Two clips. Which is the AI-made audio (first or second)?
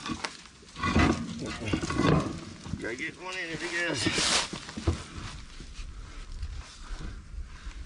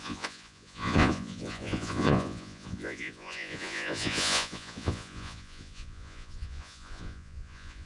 second